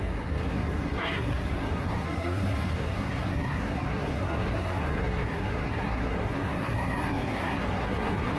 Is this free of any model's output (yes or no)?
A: no